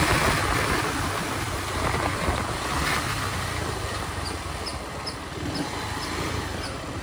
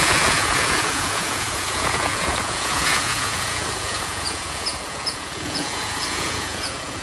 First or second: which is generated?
second